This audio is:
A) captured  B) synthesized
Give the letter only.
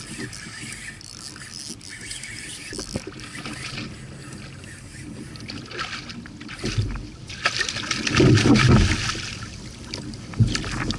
A